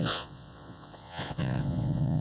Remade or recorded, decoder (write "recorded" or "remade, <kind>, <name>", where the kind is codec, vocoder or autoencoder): remade, vocoder, Vocos